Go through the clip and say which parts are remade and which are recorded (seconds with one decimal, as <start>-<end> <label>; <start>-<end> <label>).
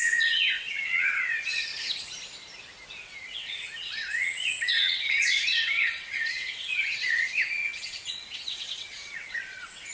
0.0-1.7 remade; 1.7-3.0 recorded; 3.0-9.9 remade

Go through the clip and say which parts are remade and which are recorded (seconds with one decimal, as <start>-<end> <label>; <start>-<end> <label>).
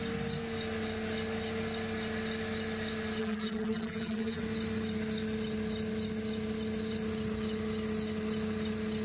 0.0-3.2 recorded; 3.2-4.4 remade; 4.4-9.0 recorded